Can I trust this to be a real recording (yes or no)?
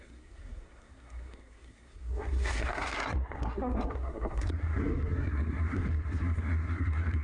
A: no